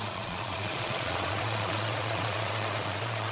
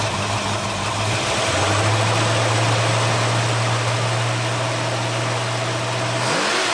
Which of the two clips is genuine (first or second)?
second